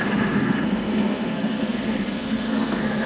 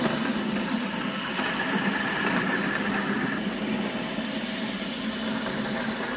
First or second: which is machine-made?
first